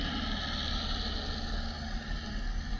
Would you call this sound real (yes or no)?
yes